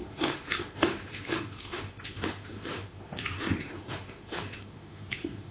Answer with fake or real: fake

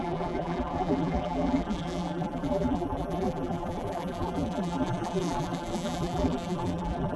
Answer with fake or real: fake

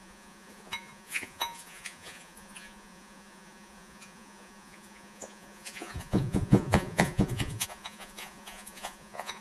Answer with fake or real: fake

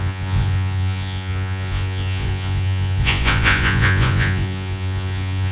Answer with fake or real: fake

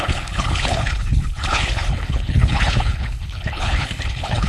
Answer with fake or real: fake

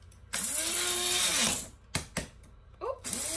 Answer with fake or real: real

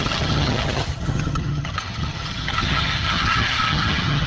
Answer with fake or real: fake